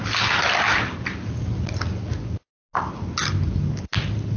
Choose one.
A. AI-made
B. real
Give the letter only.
B